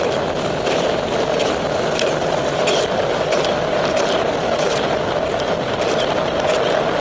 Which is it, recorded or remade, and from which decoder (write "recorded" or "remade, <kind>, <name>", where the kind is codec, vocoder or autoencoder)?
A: recorded